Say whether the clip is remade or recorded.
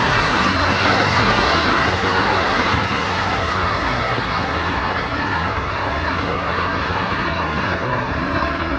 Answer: remade